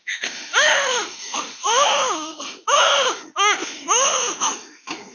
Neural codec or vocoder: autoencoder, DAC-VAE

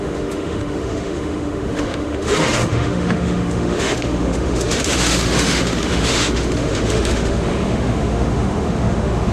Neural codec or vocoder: autoencoder, DAC-VAE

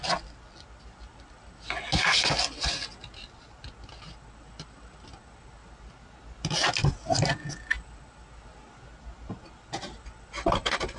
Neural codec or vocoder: none